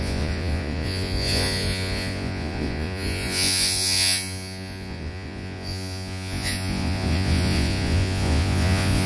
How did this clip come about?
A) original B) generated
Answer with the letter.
B